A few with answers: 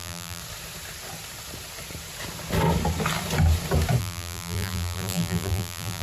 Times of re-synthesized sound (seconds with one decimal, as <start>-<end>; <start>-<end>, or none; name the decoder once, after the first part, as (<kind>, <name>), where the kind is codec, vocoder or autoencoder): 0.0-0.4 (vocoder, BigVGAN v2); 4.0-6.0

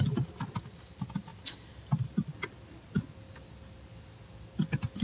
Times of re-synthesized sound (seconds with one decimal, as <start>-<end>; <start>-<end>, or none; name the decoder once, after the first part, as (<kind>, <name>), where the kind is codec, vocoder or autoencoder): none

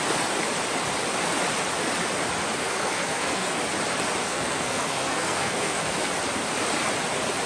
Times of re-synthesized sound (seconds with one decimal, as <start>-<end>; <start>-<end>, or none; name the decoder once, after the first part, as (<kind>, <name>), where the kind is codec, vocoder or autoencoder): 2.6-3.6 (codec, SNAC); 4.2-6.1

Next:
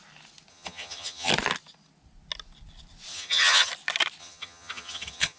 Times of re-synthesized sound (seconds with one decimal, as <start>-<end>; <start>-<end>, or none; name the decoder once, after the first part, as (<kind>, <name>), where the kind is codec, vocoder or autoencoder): 0.5-1.3 (vocoder, HiFi-GAN); 3.1-3.7; 4.2-5.4